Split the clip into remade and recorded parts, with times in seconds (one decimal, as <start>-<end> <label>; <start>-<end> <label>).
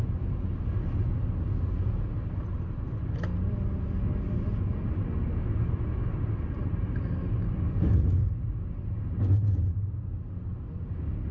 0.0-11.3 recorded